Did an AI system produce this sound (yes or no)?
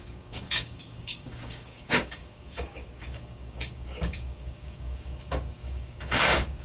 yes